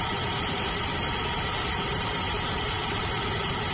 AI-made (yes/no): yes